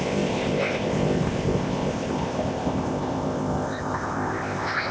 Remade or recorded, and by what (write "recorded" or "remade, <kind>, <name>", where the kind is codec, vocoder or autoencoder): remade, codec, ZipCodec